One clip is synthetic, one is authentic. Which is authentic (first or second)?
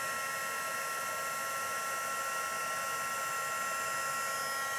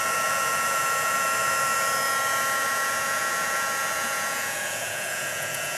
first